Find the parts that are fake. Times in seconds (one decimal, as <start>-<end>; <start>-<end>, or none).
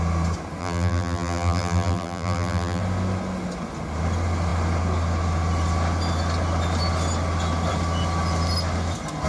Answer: 0.6-2.8